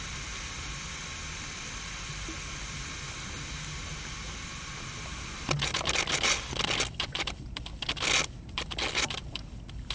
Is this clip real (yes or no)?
yes